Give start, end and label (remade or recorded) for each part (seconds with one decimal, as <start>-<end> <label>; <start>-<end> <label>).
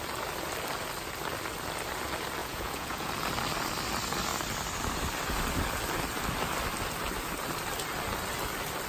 0.0-2.4 recorded; 2.4-3.1 remade; 3.1-8.9 recorded